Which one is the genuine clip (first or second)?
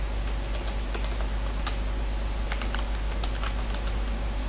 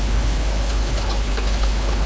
first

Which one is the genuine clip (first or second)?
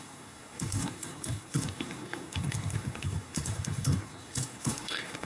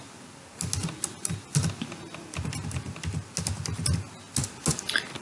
second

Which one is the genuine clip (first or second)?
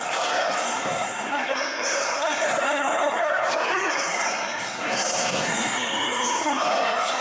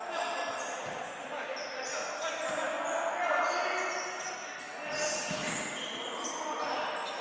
second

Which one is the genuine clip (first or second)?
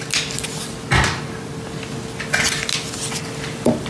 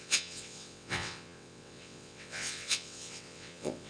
first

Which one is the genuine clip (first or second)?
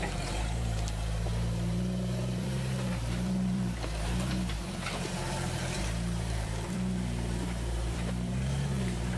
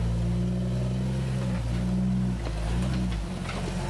second